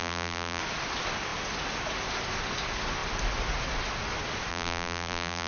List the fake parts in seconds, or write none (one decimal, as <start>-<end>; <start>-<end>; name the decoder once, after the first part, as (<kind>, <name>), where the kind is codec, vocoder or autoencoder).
0.0-0.6 (vocoder, BigVGAN v2); 4.5-5.5